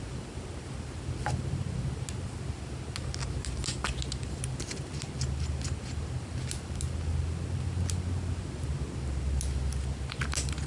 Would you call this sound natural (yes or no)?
yes